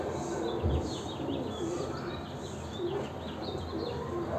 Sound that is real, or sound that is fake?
real